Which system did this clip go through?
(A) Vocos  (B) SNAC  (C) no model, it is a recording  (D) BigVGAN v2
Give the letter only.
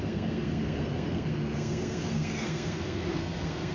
B